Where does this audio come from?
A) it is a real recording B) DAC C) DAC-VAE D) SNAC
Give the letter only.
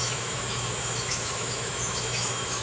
C